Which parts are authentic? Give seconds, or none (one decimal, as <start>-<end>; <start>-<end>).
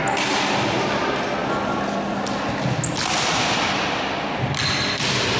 0.0-5.4